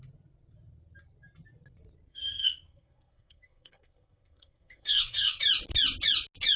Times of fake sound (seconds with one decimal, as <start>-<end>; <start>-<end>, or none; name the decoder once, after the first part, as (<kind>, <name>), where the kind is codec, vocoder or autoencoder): 2.1-5.4 (codec, SNAC)